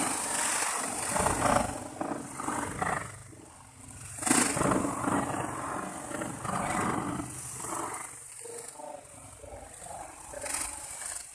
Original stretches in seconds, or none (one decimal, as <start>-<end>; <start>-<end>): 0.0-11.3